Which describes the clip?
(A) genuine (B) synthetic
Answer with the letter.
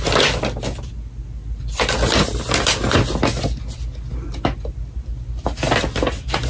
A